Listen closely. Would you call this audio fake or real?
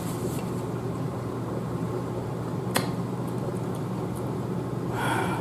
fake